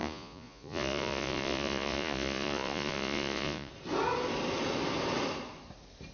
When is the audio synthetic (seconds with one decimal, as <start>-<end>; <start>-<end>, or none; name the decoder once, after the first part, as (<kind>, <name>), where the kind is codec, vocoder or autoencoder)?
0.0-3.7 (vocoder, Vocos)